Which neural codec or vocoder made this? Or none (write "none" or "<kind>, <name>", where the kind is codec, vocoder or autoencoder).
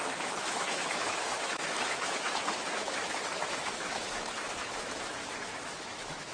autoencoder, DAC-VAE